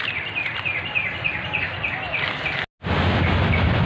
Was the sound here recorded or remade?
recorded